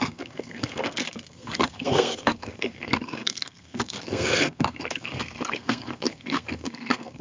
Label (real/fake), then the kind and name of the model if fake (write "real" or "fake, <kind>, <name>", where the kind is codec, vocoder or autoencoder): fake, codec, SNAC